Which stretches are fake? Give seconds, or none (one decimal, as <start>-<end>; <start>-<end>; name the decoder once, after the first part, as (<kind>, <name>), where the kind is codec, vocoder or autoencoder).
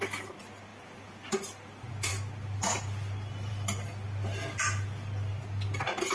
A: none